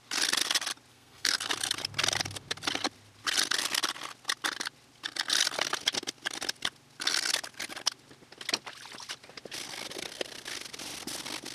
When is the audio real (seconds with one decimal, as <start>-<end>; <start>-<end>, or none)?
0.0-0.9; 1.5-11.5